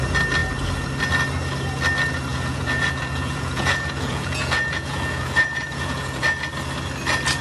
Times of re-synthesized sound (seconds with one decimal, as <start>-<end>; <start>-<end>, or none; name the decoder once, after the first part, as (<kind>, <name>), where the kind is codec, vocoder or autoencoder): 2.3-6.5 (vocoder, Vocos)